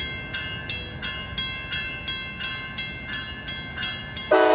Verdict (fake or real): real